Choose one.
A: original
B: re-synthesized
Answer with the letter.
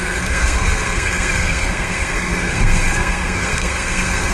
B